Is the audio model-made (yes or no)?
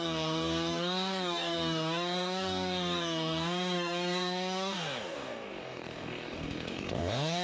yes